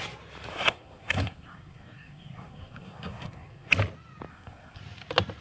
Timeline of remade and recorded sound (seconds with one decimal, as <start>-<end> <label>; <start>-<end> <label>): 0.0-0.5 recorded; 0.5-3.7 remade; 3.7-4.3 recorded; 4.3-4.8 remade; 4.8-5.4 recorded